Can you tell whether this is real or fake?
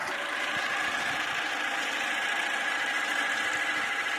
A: real